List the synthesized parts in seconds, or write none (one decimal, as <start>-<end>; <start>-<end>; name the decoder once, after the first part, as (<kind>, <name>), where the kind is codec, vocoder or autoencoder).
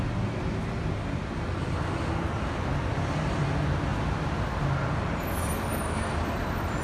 none